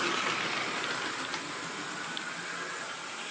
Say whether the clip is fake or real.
real